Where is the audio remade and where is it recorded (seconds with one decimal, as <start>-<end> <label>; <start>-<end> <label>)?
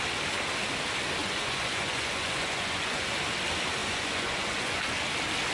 0.0-1.2 recorded; 1.2-3.1 remade; 3.1-3.8 recorded; 3.8-4.8 remade; 4.8-5.5 recorded